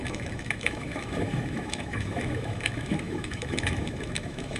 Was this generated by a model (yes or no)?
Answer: yes